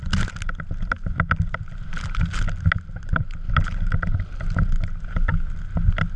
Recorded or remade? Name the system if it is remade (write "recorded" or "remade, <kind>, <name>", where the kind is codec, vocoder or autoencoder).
recorded